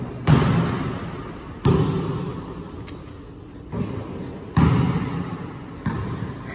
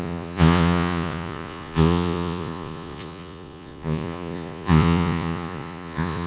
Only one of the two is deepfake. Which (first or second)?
second